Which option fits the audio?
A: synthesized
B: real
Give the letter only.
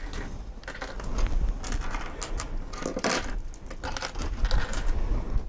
B